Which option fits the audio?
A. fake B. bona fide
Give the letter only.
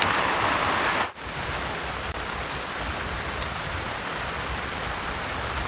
B